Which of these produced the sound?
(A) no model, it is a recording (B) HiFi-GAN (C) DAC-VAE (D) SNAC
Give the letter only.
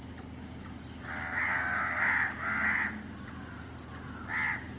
A